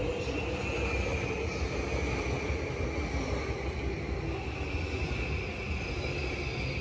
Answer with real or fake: real